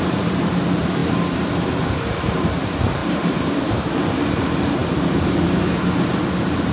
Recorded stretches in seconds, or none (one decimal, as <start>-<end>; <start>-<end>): 1.0-1.8